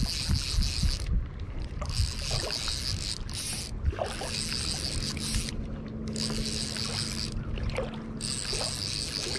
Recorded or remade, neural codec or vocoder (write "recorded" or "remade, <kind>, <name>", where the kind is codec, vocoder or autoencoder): recorded